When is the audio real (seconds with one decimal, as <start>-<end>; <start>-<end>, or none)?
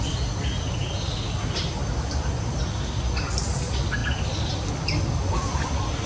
0.0-6.1